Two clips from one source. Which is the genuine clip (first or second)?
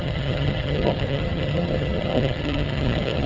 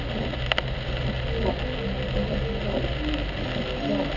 second